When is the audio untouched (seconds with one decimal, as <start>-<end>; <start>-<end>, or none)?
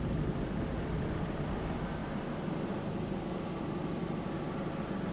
0.0-5.1